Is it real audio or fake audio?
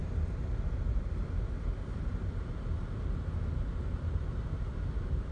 real